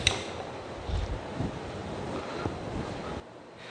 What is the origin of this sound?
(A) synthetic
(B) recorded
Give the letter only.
B